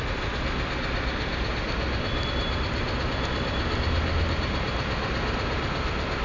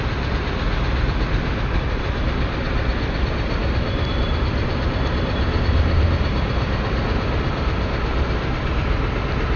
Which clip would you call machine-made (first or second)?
second